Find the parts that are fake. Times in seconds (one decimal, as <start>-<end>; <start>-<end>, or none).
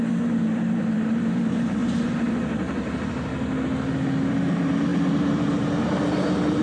0.0-1.8; 4.3-6.6